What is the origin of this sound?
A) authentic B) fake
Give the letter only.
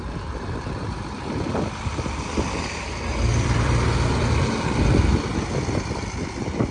B